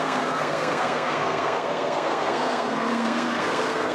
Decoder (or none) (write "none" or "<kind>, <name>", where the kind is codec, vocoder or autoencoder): codec, SNAC